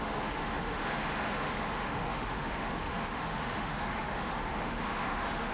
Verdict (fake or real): fake